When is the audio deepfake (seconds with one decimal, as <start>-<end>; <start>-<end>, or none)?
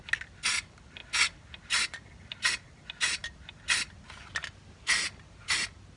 none